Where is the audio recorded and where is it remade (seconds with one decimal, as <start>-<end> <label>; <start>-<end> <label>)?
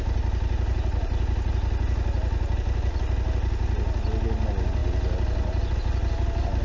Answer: 0.0-6.6 recorded